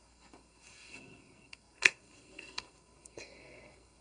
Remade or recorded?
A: remade